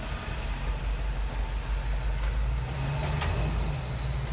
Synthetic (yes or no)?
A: no